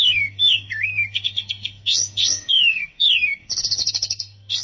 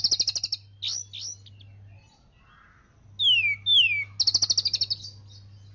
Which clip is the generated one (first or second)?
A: first